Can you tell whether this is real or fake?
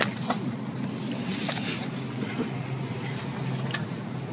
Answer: real